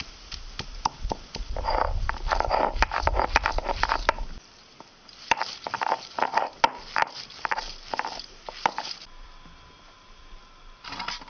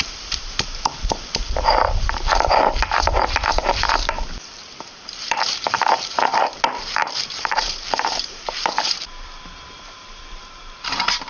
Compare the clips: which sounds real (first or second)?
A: first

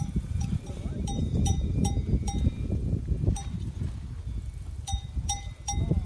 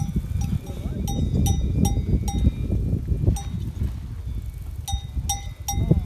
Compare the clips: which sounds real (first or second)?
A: second